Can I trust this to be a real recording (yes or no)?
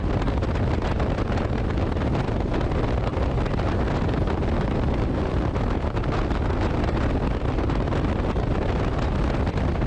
yes